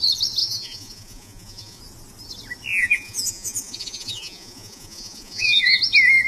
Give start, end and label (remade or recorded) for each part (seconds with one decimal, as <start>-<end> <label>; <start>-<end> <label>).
0.0-0.4 recorded; 0.4-1.8 remade; 1.8-2.7 recorded; 2.7-5.8 remade; 5.8-6.3 recorded